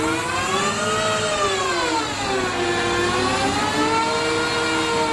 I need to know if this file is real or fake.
real